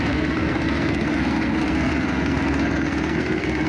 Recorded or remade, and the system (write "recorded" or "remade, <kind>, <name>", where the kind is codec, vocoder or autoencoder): remade, codec, SNAC